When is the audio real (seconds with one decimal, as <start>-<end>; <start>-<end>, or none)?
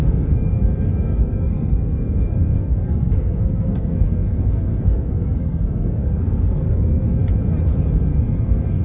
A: 7.2-8.1